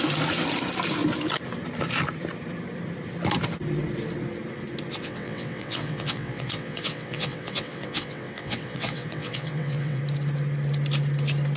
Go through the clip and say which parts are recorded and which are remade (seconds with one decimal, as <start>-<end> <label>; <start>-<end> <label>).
0.0-5.0 recorded; 5.0-10.0 remade; 10.0-11.6 recorded